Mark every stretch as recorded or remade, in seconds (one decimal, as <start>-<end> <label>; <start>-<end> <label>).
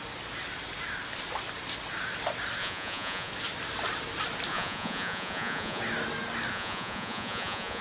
0.0-2.6 recorded; 2.6-3.3 remade; 3.3-4.5 recorded; 4.5-5.8 remade; 5.8-6.5 recorded; 6.5-7.8 remade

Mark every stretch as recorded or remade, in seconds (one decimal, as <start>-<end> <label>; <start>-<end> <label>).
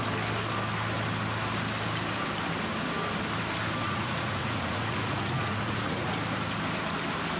0.0-3.8 recorded; 3.8-6.1 remade; 6.1-7.4 recorded